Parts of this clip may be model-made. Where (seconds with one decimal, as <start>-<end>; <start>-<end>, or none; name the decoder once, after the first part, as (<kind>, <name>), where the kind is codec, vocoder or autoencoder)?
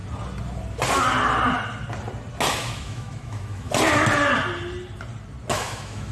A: 2.5-3.7 (autoencoder, DAC-VAE); 5.5-6.1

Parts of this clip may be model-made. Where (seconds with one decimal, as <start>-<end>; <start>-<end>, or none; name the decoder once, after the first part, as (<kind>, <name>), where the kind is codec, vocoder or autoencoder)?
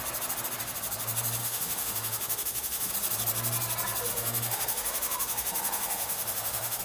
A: 1.4-2.9 (autoencoder, DAC-VAE); 4.1-6.8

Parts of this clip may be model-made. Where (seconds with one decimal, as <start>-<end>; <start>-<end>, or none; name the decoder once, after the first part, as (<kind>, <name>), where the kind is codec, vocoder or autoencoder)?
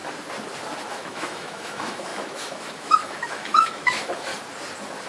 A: 0.9-4.3 (autoencoder, DAC-VAE)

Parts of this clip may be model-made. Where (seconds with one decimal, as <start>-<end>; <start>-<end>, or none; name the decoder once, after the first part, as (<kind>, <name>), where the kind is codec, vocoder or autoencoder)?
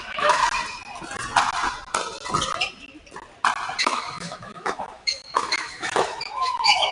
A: 0.0-0.4 (autoencoder, DAC-VAE); 3.8-6.9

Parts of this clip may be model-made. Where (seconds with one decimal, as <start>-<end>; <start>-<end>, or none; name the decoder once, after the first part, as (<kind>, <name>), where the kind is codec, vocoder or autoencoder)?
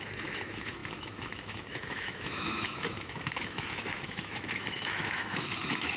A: 0.0-6.0 (autoencoder, DAC-VAE)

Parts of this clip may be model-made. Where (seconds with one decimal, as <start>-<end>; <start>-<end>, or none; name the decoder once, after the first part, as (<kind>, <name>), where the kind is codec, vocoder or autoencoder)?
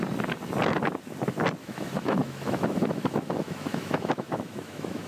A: 1.6-5.1 (autoencoder, DAC-VAE)